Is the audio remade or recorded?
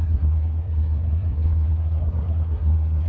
remade